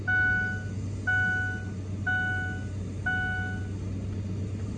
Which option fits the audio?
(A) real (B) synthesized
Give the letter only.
A